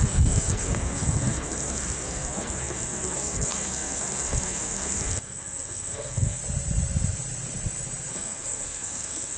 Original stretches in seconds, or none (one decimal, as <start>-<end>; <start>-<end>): 6.4-8.1